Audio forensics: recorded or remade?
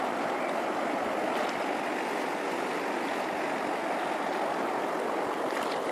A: recorded